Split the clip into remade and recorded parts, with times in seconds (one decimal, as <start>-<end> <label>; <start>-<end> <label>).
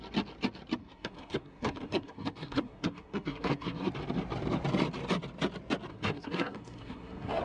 0.0-0.8 recorded; 0.8-3.9 remade; 3.9-5.9 recorded; 5.9-7.4 remade